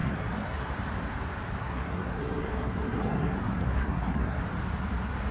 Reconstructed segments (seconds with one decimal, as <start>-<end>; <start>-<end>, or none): 0.0-0.7; 1.6-4.4